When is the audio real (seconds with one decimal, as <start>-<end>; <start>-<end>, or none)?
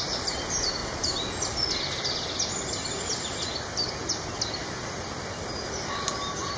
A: 0.0-6.6